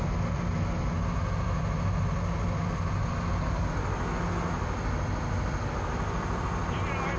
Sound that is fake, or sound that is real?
real